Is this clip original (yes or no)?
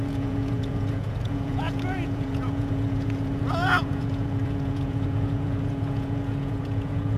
no